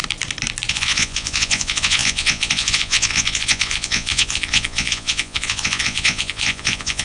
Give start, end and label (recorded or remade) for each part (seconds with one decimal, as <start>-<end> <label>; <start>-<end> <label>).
0.0-0.7 recorded; 0.7-7.0 remade